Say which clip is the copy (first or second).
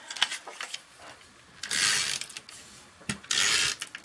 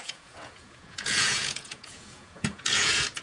second